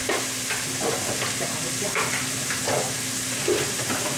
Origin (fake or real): real